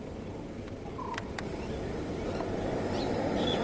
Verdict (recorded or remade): recorded